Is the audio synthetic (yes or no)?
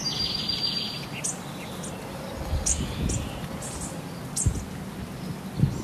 no